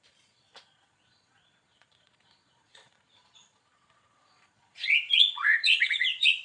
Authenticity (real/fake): fake